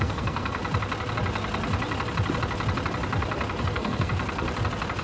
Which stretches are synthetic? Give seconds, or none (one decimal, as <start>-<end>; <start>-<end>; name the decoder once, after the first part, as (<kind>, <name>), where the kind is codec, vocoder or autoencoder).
0.0-0.6 (codec, SNAC); 3.6-4.1